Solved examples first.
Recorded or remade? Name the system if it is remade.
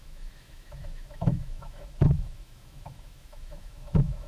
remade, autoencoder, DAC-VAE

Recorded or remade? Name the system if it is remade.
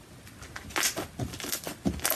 recorded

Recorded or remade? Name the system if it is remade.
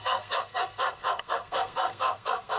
remade, codec, SNAC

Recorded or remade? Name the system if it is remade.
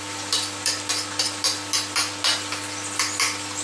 recorded